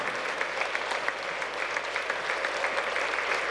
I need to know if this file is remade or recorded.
recorded